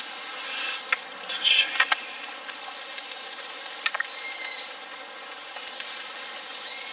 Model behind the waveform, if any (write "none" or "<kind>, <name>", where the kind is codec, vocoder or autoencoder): none